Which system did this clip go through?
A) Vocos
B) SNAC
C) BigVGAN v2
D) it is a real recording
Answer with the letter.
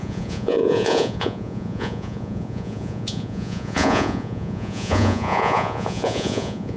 A